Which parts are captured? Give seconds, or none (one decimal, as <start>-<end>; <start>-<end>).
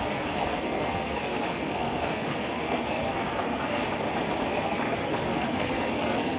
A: 3.8-4.5